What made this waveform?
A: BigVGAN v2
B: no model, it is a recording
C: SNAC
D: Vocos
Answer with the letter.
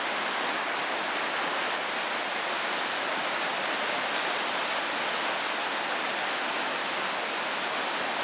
B